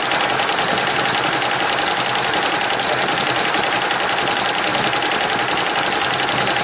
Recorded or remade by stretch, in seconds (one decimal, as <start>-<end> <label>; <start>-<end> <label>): 0.0-6.6 recorded